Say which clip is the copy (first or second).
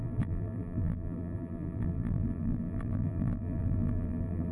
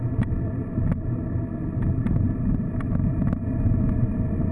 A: first